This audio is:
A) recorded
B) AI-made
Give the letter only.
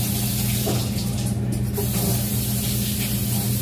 A